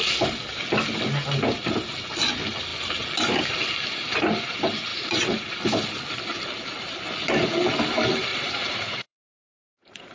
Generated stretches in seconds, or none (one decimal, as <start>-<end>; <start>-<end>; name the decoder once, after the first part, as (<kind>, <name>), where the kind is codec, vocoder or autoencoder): 4.9-5.5 (vocoder, Vocos); 8.3-10.1